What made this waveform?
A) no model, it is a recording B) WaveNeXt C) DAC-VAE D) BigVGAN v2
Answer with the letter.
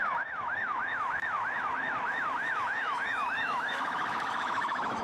C